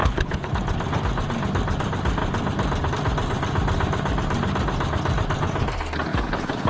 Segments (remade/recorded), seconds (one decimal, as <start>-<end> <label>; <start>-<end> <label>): 0.0-0.5 remade; 0.5-6.1 recorded; 6.1-6.7 remade